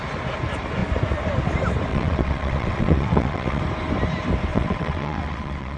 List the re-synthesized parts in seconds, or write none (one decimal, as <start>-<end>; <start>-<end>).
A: 1.9-3.6; 4.5-5.8